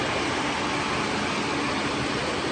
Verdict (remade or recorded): recorded